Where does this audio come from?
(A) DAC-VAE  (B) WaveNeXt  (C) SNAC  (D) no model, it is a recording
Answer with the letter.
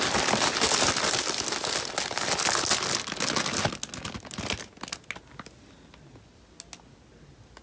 D